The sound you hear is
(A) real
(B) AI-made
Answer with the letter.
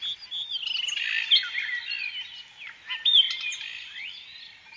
A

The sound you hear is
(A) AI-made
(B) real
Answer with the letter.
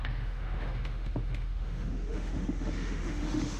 A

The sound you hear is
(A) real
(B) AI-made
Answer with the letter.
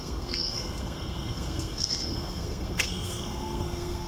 B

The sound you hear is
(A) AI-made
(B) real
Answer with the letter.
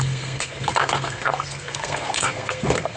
A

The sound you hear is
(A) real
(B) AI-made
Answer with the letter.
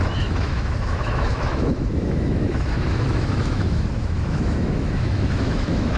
B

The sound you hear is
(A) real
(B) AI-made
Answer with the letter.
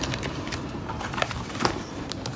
B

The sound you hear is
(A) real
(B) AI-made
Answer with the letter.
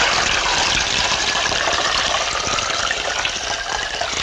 A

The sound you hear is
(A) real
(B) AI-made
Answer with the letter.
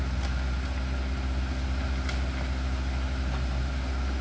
A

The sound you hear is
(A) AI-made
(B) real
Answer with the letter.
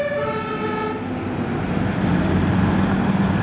B